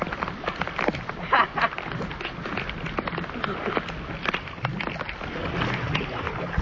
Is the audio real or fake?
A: real